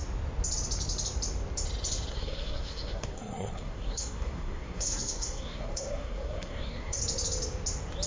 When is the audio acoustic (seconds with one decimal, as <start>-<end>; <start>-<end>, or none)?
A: 0.0-2.1; 7.0-8.1